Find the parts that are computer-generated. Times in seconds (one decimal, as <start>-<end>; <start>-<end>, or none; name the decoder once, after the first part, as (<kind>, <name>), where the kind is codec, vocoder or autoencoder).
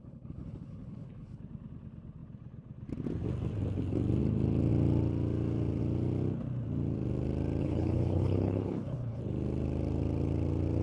0.0-1.4 (codec, HILCodec); 7.6-9.2